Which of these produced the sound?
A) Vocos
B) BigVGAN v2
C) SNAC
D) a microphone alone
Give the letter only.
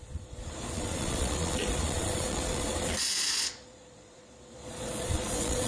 A